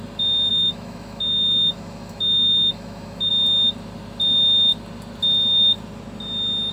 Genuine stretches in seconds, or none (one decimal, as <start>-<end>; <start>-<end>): 0.0-0.5; 3.3-6.7